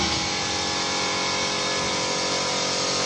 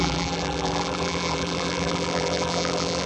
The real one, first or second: first